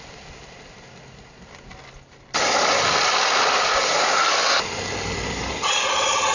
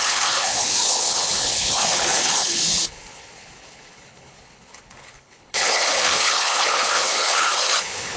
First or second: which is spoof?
second